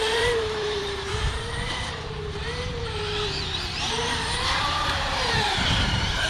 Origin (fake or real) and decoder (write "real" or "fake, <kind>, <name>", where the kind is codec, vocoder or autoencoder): fake, vocoder, BigVGAN v2